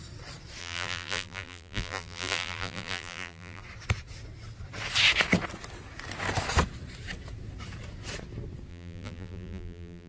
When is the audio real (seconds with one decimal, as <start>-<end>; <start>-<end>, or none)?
0.0-0.6; 3.6-8.7